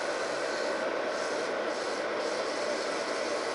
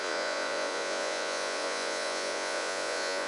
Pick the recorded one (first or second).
first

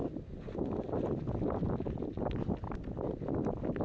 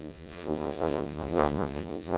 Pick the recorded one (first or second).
first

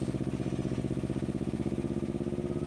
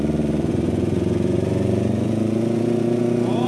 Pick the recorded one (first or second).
first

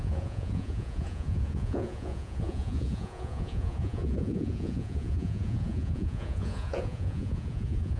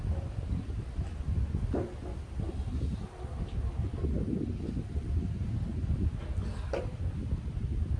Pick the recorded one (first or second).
second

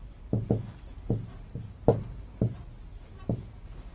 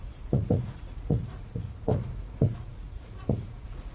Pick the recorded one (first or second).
first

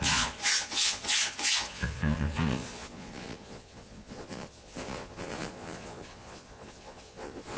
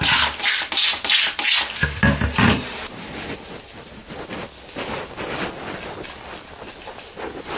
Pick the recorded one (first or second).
second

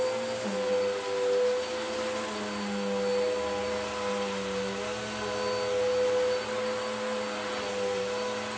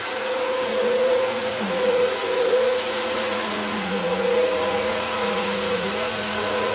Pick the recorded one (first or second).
first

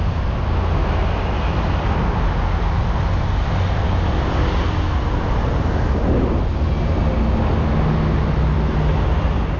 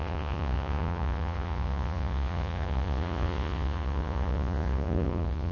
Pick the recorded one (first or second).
first